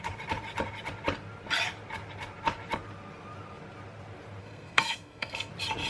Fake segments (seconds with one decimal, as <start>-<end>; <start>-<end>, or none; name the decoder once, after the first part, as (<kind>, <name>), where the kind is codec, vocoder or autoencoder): 4.4-5.5 (codec, SNAC)